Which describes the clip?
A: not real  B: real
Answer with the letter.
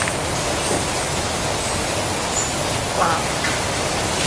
B